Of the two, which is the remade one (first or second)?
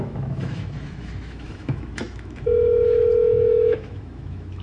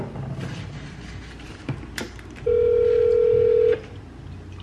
first